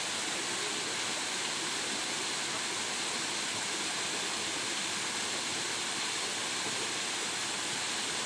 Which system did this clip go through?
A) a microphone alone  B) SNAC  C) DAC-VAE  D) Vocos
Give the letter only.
A